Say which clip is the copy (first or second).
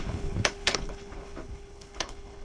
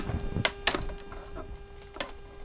first